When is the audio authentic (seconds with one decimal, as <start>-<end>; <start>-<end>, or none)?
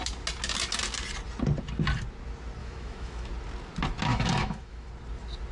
0.0-2.6; 3.3-4.1; 4.9-5.5